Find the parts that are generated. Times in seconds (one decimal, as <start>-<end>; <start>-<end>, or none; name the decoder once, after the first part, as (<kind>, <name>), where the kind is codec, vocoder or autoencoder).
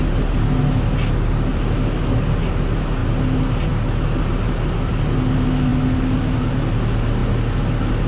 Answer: none